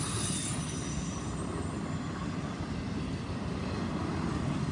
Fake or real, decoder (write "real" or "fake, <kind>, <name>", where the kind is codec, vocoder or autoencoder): real